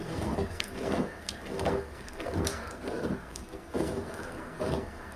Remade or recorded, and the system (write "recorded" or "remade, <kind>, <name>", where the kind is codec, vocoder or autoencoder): remade, codec, SNAC